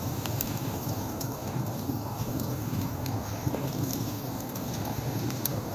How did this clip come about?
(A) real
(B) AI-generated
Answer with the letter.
B